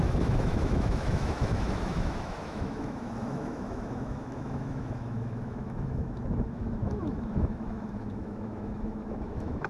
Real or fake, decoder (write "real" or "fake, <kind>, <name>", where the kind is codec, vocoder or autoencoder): fake, autoencoder, DAC-VAE